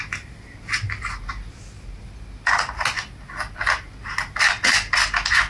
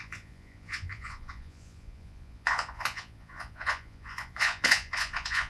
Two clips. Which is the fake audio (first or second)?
second